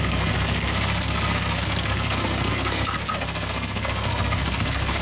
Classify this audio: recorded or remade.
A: remade